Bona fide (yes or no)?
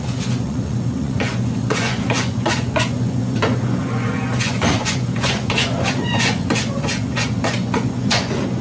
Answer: no